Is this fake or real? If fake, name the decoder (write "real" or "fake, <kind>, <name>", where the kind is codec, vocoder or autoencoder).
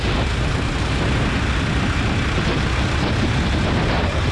real